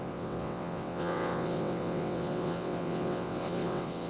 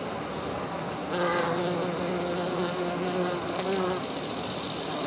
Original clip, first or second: second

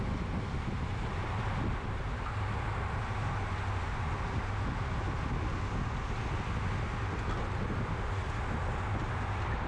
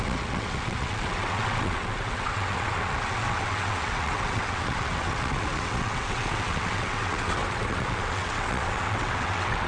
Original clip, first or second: first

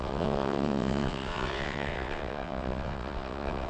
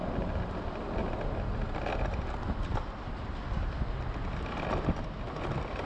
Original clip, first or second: second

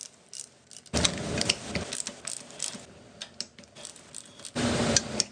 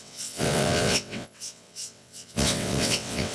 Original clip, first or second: first